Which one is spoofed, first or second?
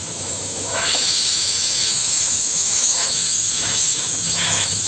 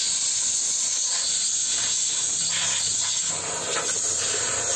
first